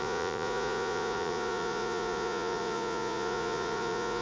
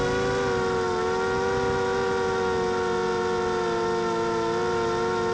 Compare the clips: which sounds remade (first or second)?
first